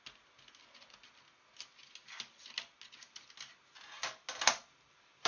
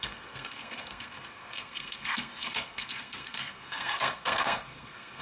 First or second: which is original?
first